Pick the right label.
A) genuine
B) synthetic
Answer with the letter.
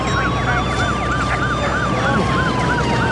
A